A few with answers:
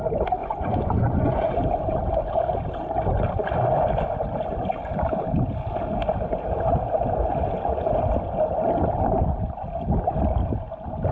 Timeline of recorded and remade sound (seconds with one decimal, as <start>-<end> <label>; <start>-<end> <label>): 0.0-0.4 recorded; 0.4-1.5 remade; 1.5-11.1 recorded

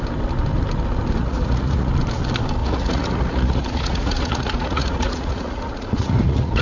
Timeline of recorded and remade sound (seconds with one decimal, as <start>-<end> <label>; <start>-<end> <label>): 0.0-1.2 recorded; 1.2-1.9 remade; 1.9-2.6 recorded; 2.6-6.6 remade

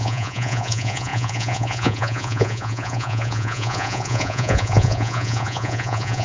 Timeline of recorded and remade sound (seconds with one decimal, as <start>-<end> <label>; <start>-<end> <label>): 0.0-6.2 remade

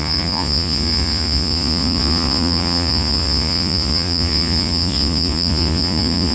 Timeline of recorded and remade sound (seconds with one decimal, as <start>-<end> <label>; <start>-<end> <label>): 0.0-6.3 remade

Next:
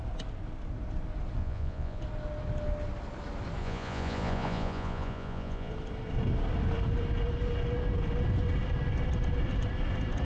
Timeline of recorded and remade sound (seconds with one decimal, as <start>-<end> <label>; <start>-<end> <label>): 0.0-1.4 recorded; 1.4-2.0 remade; 2.0-3.6 recorded; 3.6-5.7 remade; 5.7-10.2 recorded

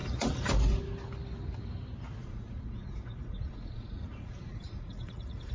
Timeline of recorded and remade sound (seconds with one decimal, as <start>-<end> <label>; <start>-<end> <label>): 0.0-0.5 remade; 0.5-2.2 recorded; 2.2-5.5 remade

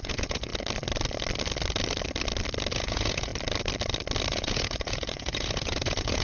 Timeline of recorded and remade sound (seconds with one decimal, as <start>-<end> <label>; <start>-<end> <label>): 0.0-0.5 remade; 0.5-2.7 recorded; 2.7-3.3 remade; 3.3-4.3 recorded; 4.3-6.2 remade